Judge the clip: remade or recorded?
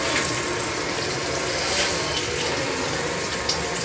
recorded